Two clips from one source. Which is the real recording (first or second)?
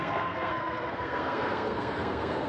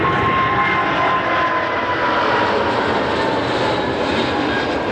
second